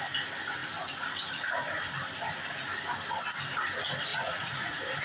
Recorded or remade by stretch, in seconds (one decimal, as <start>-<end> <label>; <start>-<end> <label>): 0.0-4.1 recorded; 4.1-5.0 remade